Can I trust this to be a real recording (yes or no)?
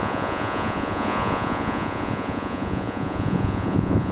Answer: no